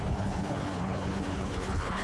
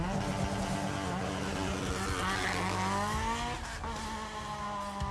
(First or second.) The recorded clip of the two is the second